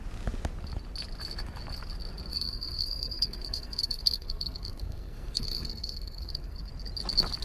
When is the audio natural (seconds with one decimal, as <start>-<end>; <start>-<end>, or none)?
0.0-2.3; 6.7-7.4